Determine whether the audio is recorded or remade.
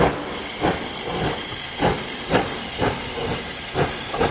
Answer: recorded